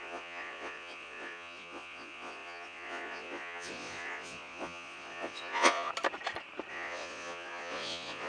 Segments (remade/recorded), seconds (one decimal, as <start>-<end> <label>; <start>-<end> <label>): 0.0-5.9 remade; 5.9-6.7 recorded; 6.7-8.3 remade